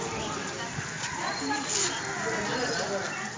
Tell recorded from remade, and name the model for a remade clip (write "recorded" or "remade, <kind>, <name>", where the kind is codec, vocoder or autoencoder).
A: recorded